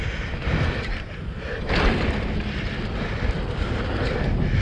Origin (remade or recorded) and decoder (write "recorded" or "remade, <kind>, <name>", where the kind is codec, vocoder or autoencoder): recorded